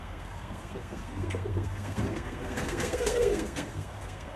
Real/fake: fake